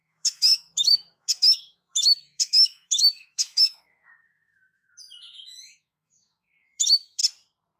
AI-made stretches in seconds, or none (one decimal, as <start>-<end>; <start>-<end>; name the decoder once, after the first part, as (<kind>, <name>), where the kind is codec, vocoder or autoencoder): 0.0-7.2 (autoencoder, DAC-VAE)